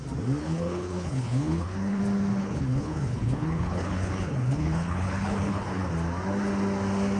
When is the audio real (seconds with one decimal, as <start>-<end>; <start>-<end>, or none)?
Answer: 0.0-0.4; 2.0-2.4; 5.9-7.2

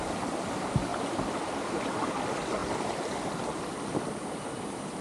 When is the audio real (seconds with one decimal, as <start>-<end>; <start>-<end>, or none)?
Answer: 0.0-0.9; 1.4-2.6; 4.3-5.0

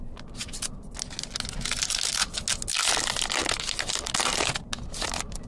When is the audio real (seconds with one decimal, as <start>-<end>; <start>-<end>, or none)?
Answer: 0.0-5.5

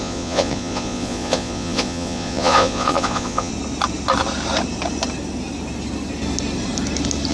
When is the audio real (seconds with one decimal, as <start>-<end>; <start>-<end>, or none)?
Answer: 3.5-7.3

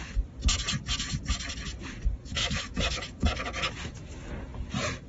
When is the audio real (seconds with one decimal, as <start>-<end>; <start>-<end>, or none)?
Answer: 0.0-2.4; 3.7-5.1